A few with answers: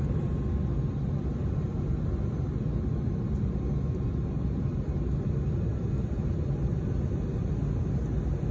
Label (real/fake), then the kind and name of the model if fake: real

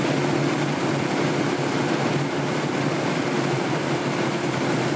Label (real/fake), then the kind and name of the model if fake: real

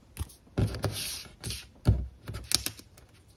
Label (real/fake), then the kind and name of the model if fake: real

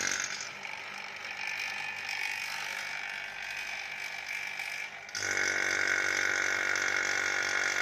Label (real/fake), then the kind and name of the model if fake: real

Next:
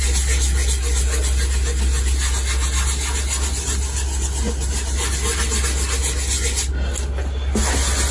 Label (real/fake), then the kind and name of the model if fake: real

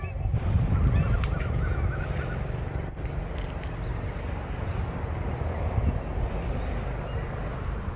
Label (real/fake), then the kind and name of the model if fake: real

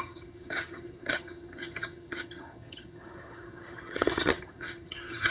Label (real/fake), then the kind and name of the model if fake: fake, vocoder, HiFi-GAN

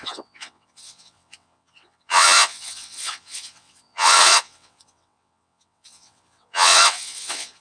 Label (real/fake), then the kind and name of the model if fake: fake, vocoder, WaveNeXt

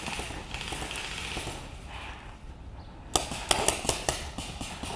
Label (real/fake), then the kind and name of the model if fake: real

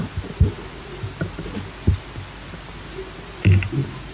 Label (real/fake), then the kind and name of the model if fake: real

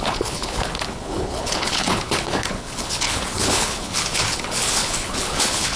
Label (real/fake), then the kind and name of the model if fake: fake, codec, HILCodec